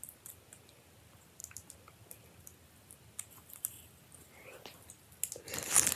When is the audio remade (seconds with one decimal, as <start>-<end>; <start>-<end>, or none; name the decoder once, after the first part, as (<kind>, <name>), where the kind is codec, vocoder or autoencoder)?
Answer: none